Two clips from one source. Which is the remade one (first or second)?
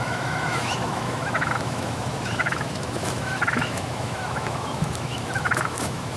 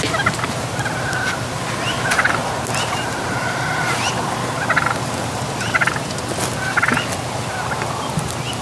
first